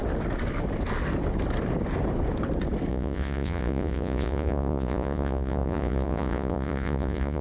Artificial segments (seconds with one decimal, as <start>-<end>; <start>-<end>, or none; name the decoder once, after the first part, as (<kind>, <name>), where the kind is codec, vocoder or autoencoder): 2.9-7.4 (vocoder, Vocos)